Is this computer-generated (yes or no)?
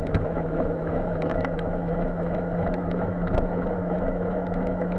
yes